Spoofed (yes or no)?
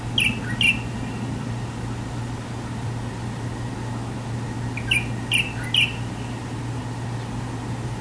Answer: no